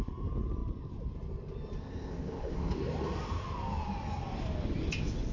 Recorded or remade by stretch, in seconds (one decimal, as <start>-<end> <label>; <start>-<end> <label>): 0.0-1.8 recorded; 1.8-2.8 remade; 2.8-5.3 recorded